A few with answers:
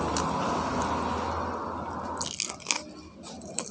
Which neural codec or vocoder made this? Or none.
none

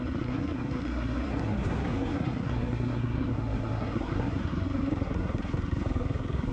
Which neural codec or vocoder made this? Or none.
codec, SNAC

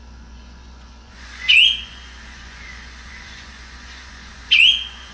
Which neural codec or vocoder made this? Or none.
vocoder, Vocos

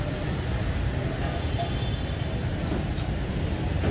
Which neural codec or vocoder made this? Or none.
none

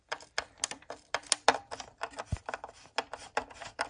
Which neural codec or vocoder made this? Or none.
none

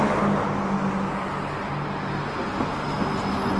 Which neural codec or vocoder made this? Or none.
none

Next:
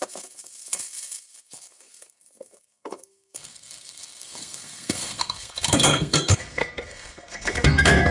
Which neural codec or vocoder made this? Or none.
codec, SNAC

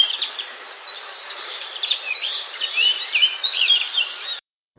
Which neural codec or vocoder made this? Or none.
vocoder, BigVGAN v2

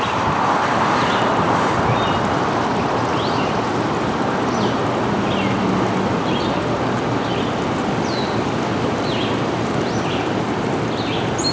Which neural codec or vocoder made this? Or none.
none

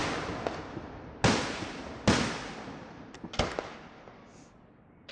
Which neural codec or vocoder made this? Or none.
none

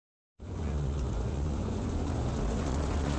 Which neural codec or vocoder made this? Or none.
vocoder, Vocos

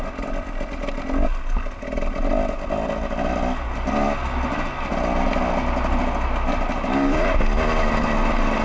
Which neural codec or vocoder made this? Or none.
none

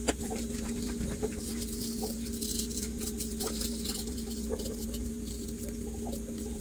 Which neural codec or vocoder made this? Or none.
vocoder, BigVGAN v2